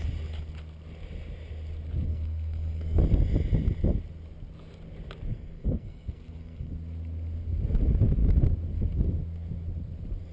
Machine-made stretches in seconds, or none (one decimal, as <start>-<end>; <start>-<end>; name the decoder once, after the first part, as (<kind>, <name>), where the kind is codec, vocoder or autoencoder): 2.1-3.0 (codec, SNAC); 5.3-6.7